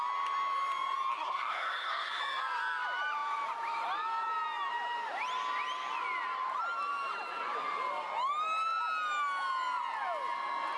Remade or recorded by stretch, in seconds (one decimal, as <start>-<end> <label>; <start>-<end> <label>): 0.0-1.1 recorded; 1.1-2.2 remade; 2.2-10.8 recorded